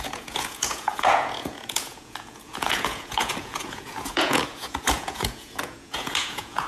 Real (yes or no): no